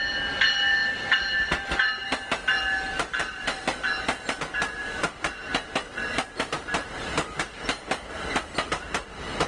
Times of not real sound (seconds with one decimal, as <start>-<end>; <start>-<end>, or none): none